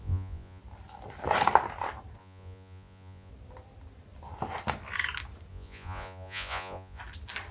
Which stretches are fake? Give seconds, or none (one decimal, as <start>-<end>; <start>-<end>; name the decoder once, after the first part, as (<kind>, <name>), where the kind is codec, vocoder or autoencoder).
0.0-0.6 (vocoder, Vocos); 2.2-3.3; 5.5-7.0